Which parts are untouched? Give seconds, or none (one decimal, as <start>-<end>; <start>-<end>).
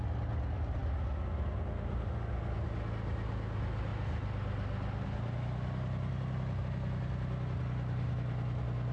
0.0-8.9